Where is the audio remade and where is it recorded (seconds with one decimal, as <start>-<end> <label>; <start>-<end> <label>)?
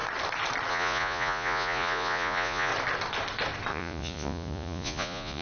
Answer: 0.0-0.7 recorded; 0.7-2.7 remade; 2.7-3.7 recorded; 3.7-5.4 remade